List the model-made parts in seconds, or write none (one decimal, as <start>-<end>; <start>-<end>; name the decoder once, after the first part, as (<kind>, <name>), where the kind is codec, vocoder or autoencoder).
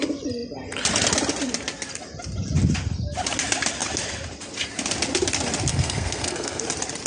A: 5.7-6.6 (codec, SNAC)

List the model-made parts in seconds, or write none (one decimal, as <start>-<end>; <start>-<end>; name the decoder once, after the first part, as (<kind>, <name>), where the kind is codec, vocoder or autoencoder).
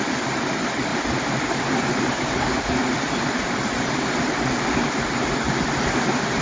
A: none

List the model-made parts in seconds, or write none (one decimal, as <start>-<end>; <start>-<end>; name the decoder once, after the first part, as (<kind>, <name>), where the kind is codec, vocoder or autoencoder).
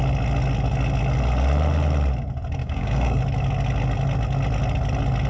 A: 2.6-3.2 (codec, DAC)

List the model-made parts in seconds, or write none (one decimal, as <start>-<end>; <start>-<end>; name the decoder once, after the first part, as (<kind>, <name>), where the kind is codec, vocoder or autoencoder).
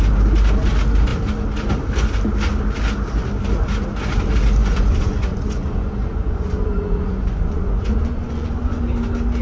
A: 4.6-8.8 (vocoder, Vocos)